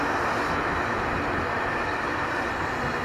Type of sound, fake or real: real